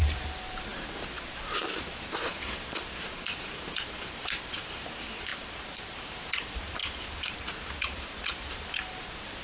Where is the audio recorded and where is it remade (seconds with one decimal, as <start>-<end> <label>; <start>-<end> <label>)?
0.0-9.4 remade